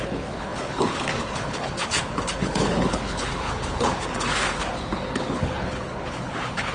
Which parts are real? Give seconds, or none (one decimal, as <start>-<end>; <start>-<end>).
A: none